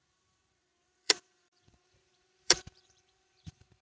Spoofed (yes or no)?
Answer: yes